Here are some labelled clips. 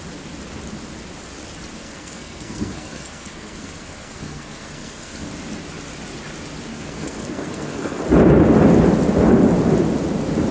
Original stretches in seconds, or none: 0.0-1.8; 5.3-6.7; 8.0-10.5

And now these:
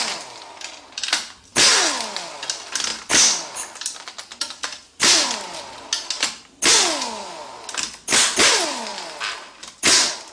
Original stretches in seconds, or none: 0.0-10.3

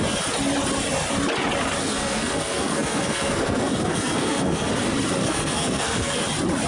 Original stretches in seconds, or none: 0.0-1.8; 4.7-5.2; 6.2-6.7

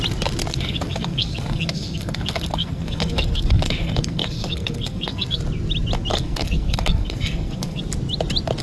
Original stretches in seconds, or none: 0.0-0.5; 5.4-6.1; 7.8-8.6

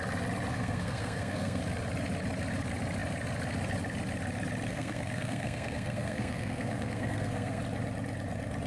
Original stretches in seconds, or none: 0.0-0.5; 1.6-4.7; 7.6-8.7

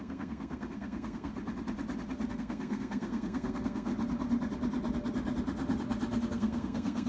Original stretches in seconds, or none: 1.3-2.3; 3.9-6.3

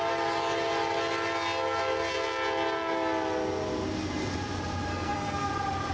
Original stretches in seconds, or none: 0.0-4.9; 5.5-5.9